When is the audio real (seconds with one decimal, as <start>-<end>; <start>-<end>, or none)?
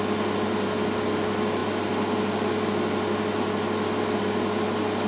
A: 0.0-5.1